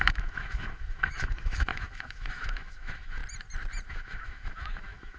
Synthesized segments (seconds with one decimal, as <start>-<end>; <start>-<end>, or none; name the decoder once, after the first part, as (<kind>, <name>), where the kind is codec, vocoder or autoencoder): 0.0-3.2 (autoencoder, DAC-VAE); 3.9-5.2